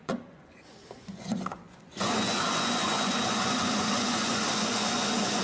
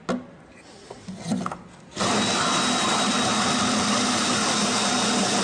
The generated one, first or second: first